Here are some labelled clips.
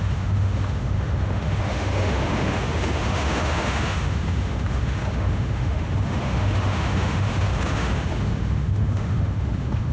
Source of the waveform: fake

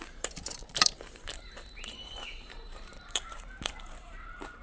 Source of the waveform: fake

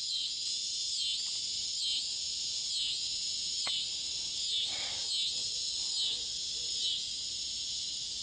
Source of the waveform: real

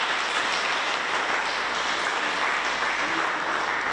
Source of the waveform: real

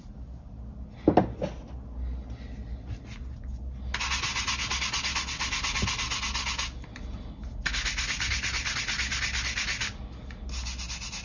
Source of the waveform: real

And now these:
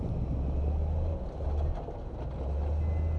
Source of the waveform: real